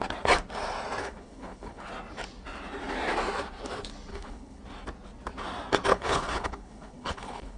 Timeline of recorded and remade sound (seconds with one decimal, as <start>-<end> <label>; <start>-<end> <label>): 0.0-1.0 recorded; 1.0-1.9 remade; 1.9-4.1 recorded; 4.1-4.6 remade; 4.6-5.9 recorded; 5.9-7.6 remade